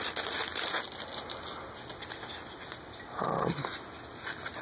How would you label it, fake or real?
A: real